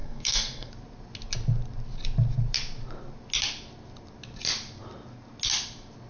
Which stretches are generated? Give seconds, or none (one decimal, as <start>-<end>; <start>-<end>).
0.0-0.7